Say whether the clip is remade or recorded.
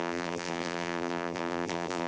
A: remade